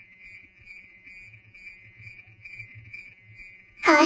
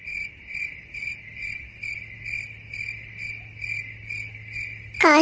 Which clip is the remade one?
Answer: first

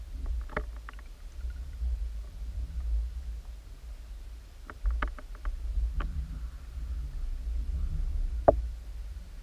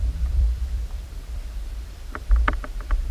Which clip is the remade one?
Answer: second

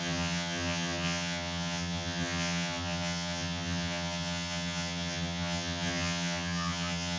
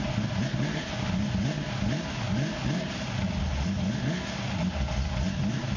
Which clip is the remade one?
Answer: first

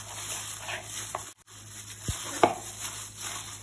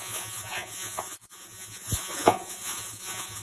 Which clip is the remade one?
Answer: second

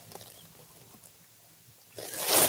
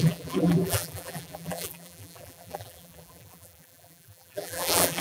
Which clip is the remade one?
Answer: second